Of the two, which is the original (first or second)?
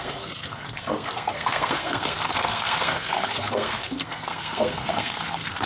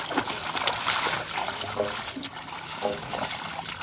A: second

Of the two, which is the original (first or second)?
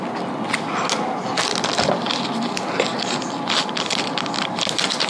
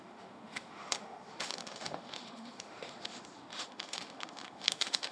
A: first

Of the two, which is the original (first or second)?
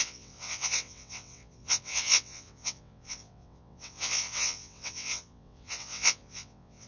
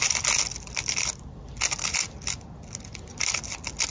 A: second